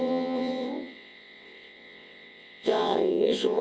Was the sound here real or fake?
fake